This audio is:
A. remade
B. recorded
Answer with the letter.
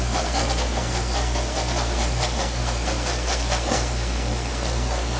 A